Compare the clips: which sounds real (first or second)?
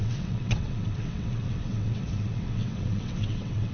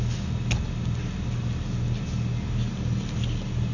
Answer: second